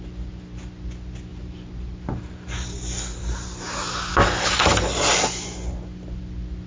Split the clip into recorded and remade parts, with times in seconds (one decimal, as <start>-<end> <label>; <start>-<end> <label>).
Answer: 0.0-6.7 recorded